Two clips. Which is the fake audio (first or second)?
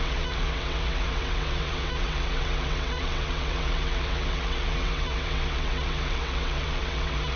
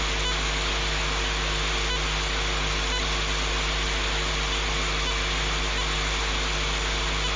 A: first